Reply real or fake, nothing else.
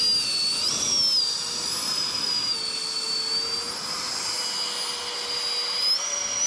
real